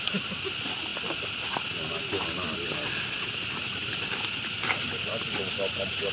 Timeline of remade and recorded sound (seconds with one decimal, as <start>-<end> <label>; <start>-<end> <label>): 0.0-6.1 recorded